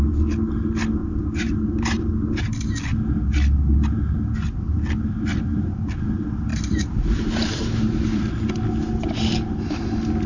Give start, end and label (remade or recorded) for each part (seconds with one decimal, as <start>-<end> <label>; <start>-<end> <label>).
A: 0.0-1.0 recorded; 1.0-2.0 remade; 2.0-6.5 recorded; 6.5-8.3 remade; 8.3-10.3 recorded